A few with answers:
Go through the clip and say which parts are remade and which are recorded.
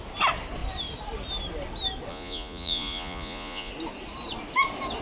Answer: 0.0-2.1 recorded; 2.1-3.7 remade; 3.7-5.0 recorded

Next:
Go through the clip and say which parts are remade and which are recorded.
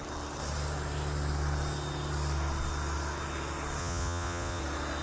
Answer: 0.0-3.8 recorded; 3.8-4.6 remade; 4.6-5.0 recorded